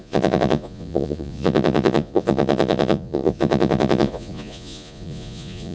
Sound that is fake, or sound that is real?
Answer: fake